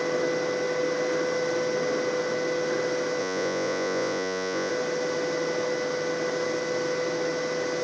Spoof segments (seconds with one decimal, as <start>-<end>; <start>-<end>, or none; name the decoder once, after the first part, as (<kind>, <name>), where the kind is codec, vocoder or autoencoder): 3.2-4.7 (vocoder, Vocos)